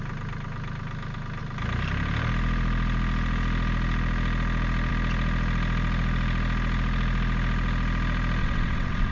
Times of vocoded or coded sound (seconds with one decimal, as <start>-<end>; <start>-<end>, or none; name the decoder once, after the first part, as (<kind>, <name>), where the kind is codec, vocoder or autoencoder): 8.4-9.1 (vocoder, WaveNeXt)